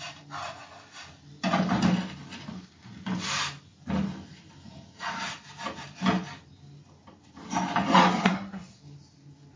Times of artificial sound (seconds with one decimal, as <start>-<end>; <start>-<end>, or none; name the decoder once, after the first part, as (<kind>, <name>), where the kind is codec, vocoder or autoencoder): 8.2-8.8 (codec, SNAC)